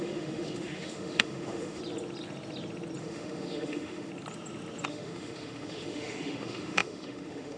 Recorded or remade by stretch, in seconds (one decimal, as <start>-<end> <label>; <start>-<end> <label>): 0.0-1.8 remade; 1.8-3.0 recorded; 3.0-4.1 remade; 4.1-4.9 recorded; 4.9-7.6 remade